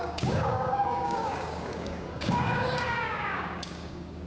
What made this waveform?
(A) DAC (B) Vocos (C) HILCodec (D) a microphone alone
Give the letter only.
A